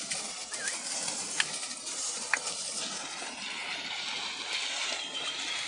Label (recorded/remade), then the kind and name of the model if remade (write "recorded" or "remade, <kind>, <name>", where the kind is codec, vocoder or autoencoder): recorded